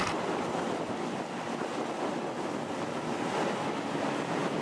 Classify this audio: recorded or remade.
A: recorded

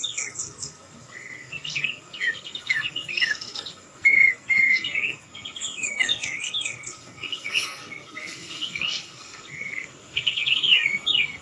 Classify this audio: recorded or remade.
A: remade